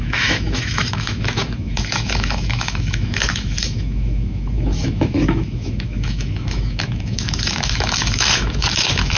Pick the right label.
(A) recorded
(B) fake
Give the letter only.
B